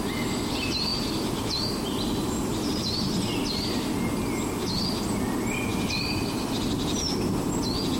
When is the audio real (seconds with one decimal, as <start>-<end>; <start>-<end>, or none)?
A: 0.0-0.9; 2.9-8.0